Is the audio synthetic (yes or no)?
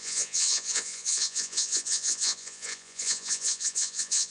yes